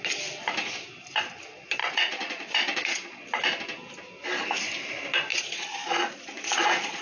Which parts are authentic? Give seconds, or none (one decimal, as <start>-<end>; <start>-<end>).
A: 0.0-1.8; 3.3-5.3